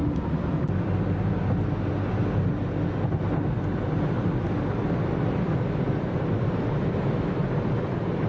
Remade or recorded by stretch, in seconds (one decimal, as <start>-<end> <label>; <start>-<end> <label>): 0.0-7.4 recorded; 7.4-8.3 remade